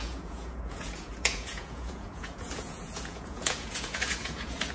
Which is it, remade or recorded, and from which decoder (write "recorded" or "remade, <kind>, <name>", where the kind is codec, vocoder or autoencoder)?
remade, vocoder, Vocos